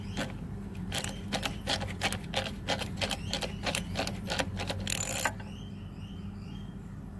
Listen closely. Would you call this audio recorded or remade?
recorded